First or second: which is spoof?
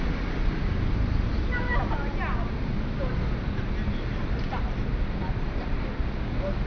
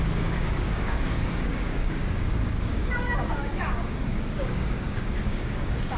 second